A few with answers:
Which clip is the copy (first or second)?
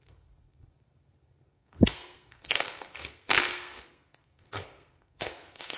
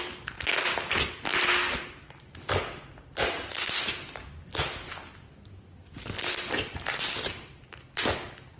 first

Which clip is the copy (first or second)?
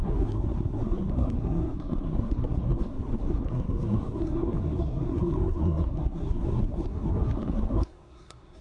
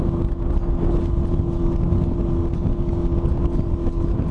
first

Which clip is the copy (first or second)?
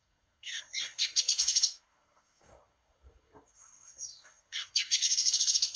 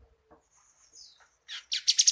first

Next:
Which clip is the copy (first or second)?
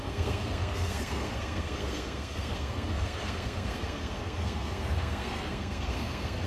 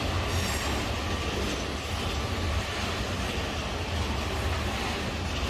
first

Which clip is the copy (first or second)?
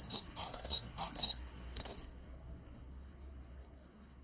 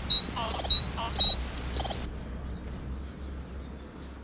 first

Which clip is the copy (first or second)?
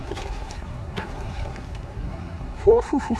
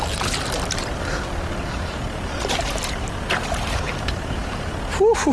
first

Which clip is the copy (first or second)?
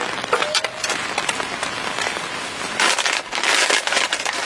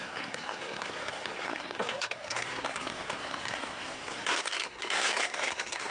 second